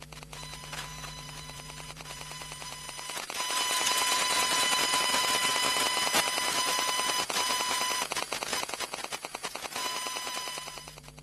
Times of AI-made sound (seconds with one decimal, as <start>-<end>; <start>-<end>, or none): 0.0-11.2